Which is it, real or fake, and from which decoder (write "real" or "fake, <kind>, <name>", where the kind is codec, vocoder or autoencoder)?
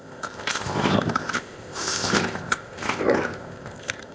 fake, codec, ZipCodec